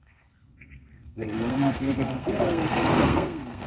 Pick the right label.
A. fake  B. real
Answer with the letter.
A